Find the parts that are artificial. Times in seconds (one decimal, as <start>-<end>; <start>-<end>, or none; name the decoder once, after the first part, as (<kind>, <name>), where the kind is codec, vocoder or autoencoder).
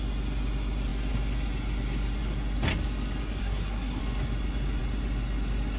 3.4-4.0 (codec, SNAC)